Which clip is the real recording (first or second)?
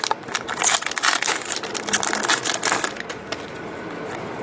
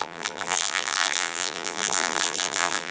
first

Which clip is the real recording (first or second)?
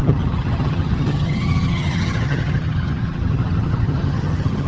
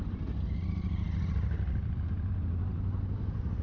second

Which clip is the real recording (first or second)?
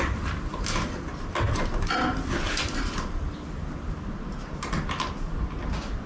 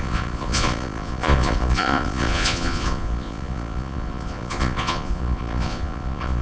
first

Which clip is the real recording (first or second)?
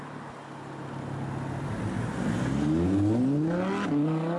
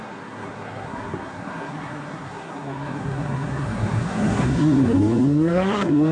first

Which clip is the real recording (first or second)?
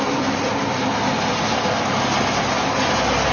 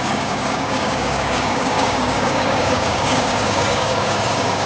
first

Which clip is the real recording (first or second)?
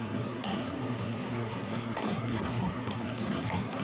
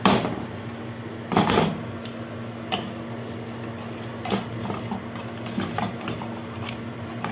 second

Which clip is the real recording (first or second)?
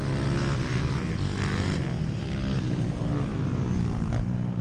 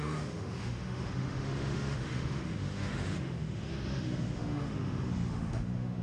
first